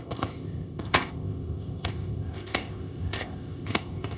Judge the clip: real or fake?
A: fake